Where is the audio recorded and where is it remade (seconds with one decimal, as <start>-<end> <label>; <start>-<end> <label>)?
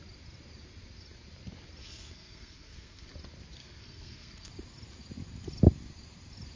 0.0-1.8 recorded; 1.8-3.1 remade; 3.1-3.6 recorded; 3.6-4.5 remade; 4.5-6.6 recorded